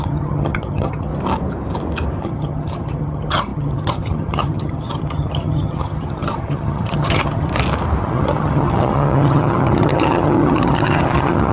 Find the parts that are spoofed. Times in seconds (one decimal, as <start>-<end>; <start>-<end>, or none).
0.0-1.1; 2.2-7.5; 8.0-11.5